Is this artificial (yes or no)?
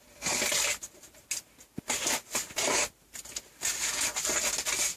no